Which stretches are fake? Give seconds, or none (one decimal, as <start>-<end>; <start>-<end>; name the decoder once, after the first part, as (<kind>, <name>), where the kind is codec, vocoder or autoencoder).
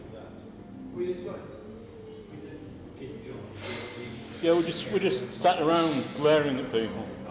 none